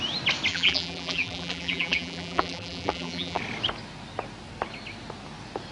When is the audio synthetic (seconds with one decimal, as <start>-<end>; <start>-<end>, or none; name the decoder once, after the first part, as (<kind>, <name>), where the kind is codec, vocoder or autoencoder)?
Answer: 0.5-3.4 (vocoder, BigVGAN v2)